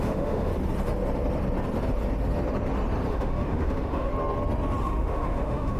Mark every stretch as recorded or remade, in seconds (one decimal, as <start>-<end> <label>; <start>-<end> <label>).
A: 0.0-0.5 remade; 0.5-3.1 recorded; 3.1-4.1 remade; 4.1-4.8 recorded; 4.8-5.8 remade